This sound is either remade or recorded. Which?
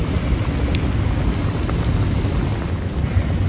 recorded